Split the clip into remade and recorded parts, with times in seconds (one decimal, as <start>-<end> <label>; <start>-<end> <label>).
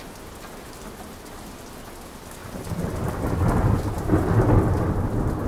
0.0-5.5 recorded